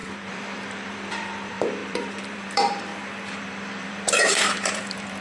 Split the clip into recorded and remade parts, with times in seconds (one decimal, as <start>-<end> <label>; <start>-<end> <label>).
0.0-2.9 remade; 2.9-3.4 recorded; 3.4-5.2 remade